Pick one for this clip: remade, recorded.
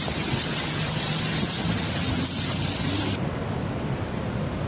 recorded